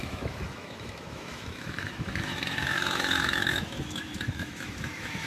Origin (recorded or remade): remade